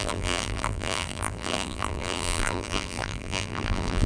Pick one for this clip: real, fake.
fake